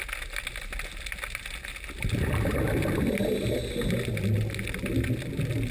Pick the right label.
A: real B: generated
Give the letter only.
A